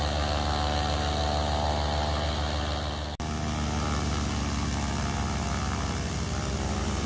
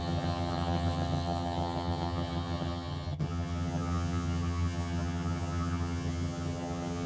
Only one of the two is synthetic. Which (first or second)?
second